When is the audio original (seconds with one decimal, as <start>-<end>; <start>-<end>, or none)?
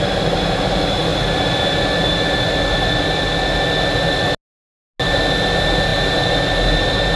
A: 0.0-7.2